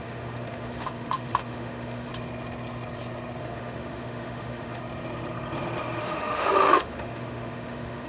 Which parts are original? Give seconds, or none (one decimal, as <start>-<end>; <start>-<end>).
2.1-3.4; 4.8-6.0